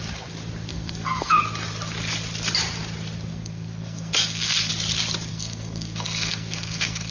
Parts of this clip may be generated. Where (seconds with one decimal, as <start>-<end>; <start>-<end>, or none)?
0.7-1.4; 3.3-4.7; 5.3-7.1